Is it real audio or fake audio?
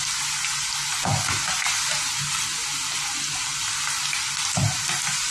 real